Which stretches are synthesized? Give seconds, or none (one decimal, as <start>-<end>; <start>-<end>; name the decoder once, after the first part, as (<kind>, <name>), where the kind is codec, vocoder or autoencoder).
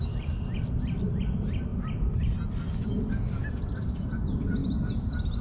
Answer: 0.0-1.7 (vocoder, BigVGAN v2); 3.0-5.4